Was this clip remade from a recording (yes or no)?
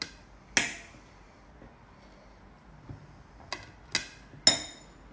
no